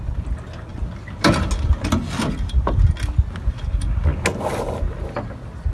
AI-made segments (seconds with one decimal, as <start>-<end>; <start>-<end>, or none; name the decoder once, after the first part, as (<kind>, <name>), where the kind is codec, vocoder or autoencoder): none

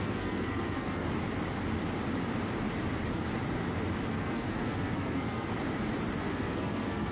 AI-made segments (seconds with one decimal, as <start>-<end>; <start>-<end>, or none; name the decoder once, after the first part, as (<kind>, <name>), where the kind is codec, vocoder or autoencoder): 0.0-1.0 (codec, SNAC); 4.1-5.5; 6.2-7.1

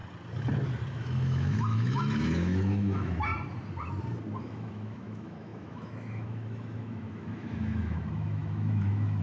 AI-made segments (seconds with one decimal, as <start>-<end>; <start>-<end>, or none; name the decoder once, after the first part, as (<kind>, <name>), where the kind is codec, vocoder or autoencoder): 0.9-3.3 (autoencoder, DAC-VAE); 4.4-9.2

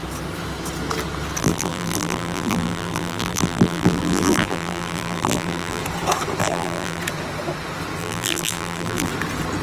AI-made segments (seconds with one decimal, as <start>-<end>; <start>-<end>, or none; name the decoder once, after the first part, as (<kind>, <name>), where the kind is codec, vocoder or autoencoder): 1.4-5.8 (vocoder, BigVGAN v2); 6.4-7.0; 8.0-9.1

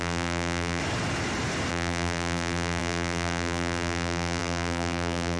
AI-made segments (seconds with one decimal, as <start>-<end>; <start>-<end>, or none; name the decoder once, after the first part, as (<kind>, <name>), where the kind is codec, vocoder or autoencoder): 0.0-0.8 (vocoder, BigVGAN v2); 1.7-5.4

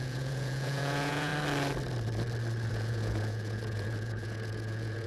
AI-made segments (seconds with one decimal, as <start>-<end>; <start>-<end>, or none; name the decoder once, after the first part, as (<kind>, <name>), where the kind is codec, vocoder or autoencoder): 0.0-1.3 (vocoder, Vocos); 2.7-5.1

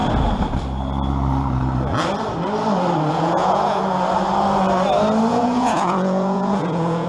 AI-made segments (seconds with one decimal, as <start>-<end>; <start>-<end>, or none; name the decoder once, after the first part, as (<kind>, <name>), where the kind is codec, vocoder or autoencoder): 3.1-3.8 (vocoder, Vocos); 5.3-7.1

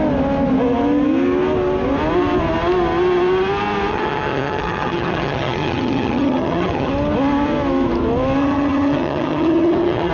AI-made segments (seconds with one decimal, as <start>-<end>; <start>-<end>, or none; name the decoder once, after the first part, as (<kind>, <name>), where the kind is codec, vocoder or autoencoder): 3.9-6.9 (vocoder, HiFi-GAN); 8.4-10.1